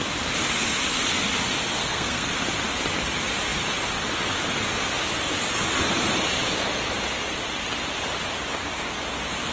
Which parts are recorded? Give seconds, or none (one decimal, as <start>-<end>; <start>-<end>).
0.0-1.8; 2.3-9.5